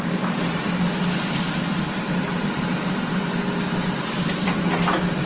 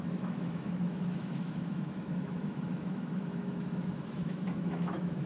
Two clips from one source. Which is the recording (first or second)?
first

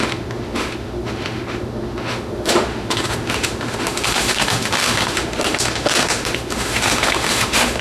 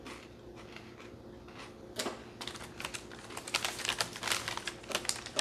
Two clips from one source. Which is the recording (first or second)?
second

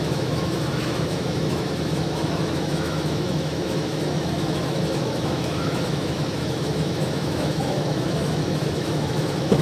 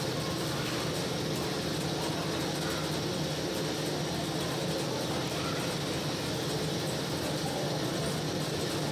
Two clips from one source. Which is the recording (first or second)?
second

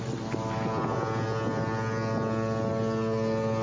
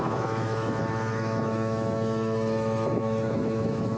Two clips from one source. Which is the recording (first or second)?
first